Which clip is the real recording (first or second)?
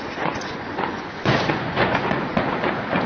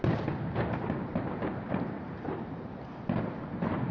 second